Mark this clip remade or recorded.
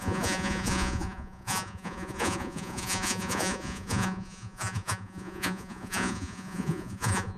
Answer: remade